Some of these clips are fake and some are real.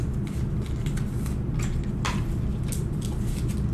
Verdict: real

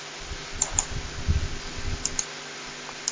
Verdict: real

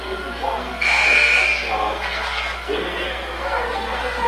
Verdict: fake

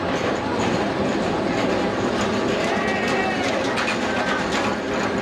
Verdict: real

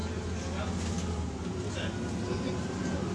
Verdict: real